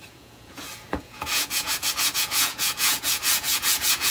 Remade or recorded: remade